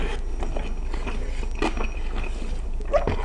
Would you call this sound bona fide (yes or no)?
yes